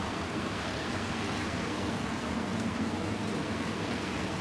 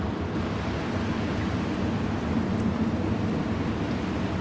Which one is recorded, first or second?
second